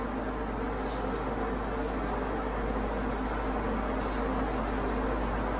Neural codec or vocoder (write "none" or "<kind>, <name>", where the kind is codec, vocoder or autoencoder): none